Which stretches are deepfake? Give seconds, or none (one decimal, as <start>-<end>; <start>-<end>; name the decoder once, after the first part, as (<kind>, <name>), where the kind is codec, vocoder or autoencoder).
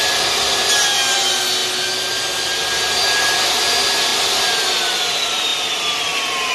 none